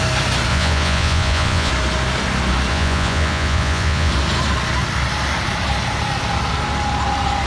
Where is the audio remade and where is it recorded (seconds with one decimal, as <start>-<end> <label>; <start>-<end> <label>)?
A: 0.0-0.5 recorded; 0.5-1.7 remade; 1.7-2.7 recorded; 2.7-4.1 remade; 4.1-7.5 recorded